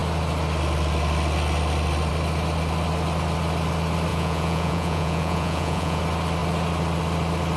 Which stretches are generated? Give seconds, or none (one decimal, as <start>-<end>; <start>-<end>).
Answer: 4.1-6.0